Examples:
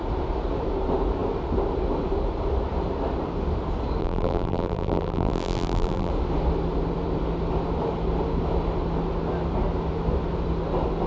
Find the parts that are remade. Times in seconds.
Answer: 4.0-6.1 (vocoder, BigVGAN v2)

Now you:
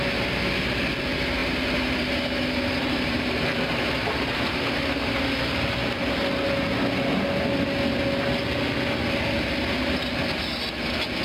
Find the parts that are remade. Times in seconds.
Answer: 1.4-4.6 (vocoder, BigVGAN v2)

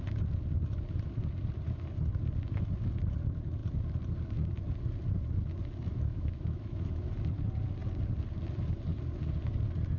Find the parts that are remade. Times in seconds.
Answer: 5.9-7.1 (autoencoder, DAC-VAE)

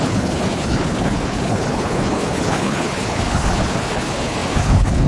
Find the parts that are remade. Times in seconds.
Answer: 0.0-5.1 (codec, HILCodec)